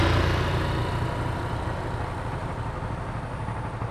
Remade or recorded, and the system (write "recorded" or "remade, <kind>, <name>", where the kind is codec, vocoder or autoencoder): recorded